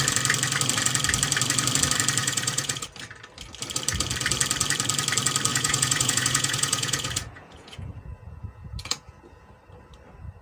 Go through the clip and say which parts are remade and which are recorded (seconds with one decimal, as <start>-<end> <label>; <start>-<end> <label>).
0.0-2.2 recorded; 2.2-2.9 remade; 2.9-5.5 recorded; 5.5-9.5 remade; 9.5-10.4 recorded